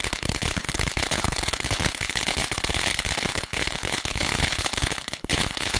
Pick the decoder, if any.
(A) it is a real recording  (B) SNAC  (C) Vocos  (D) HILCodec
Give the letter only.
D